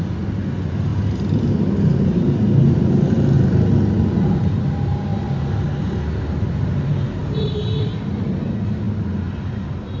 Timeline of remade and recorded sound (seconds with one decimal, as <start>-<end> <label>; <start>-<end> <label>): 0.0-7.2 recorded; 7.2-8.2 remade; 8.2-10.0 recorded